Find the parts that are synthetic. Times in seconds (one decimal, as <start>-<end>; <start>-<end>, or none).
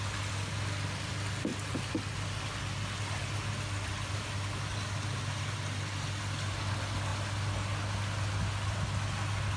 none